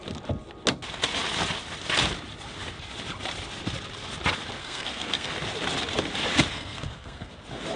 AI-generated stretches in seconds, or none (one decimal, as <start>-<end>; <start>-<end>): 4.6-5.3; 6.5-7.3